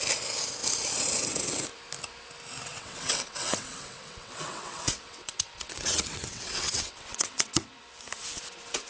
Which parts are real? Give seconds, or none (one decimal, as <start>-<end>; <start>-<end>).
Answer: 0.0-2.7; 7.7-8.9